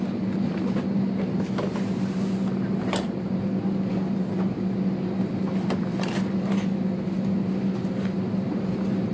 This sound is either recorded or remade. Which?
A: recorded